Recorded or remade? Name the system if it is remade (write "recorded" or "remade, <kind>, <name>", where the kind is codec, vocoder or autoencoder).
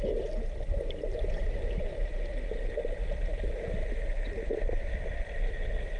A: recorded